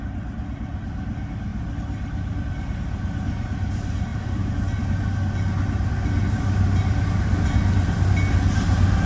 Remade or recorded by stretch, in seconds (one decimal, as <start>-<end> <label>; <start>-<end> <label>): 0.0-9.1 recorded